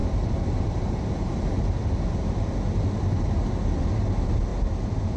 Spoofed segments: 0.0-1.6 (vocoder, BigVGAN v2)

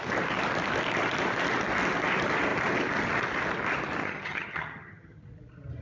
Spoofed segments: 4.0-5.2 (vocoder, HiFi-GAN)

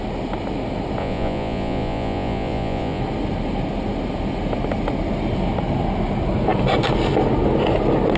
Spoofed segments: 1.0-3.0 (vocoder, Vocos)